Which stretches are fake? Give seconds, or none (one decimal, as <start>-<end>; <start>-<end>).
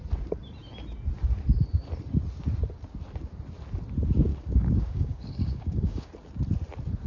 4.3-6.1